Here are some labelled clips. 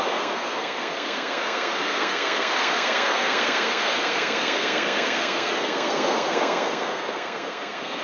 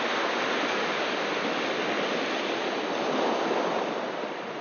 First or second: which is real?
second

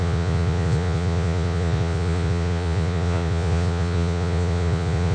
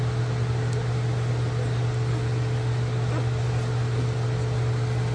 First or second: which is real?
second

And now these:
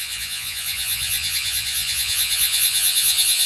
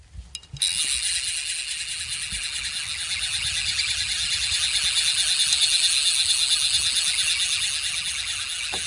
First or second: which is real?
second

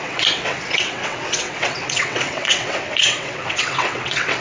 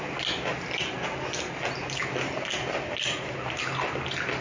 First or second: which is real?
second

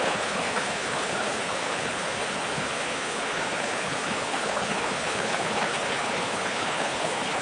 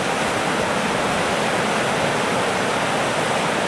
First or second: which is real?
second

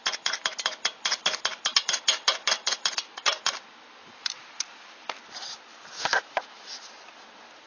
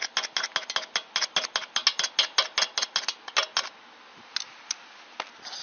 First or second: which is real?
second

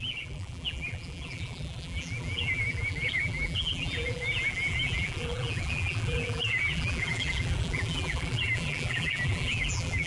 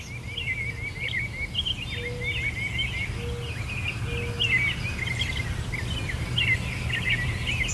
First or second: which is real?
second